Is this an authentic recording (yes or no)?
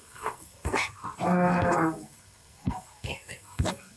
no